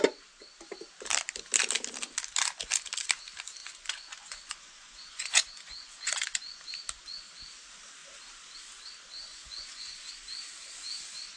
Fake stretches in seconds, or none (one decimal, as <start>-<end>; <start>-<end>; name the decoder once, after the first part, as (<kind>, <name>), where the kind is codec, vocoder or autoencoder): 3.6-6.6 (vocoder, Vocos); 9.3-10.1